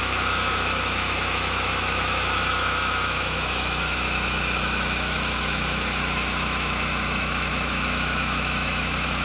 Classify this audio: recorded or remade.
remade